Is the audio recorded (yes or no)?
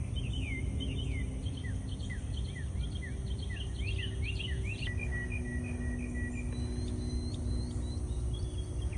yes